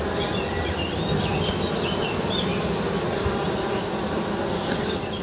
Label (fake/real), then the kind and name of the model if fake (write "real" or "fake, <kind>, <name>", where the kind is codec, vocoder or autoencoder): real